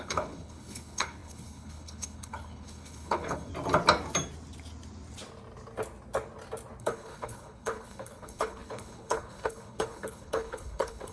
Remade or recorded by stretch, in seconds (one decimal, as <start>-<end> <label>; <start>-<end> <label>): 0.0-3.5 remade; 3.5-6.8 recorded; 6.8-11.1 remade